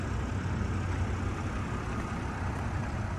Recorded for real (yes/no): yes